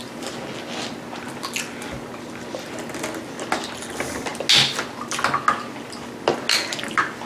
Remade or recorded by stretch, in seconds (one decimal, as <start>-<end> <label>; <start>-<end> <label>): 0.0-7.3 recorded